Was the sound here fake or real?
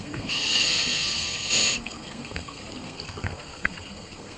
fake